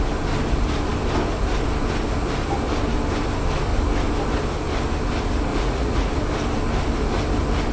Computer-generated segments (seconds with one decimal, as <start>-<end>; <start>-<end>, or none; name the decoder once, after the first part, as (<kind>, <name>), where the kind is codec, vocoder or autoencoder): 5.5-6.1 (vocoder, Vocos)

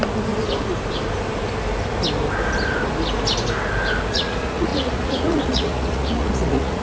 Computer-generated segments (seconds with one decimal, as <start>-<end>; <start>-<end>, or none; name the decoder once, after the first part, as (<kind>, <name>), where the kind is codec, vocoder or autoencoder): 4.1-6.8 (vocoder, Vocos)

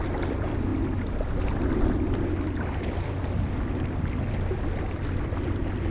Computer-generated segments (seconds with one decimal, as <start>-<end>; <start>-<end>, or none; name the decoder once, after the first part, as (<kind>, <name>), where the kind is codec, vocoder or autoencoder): none